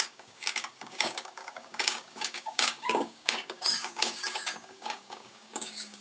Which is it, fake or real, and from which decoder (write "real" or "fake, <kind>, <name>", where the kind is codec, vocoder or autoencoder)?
fake, codec, DAC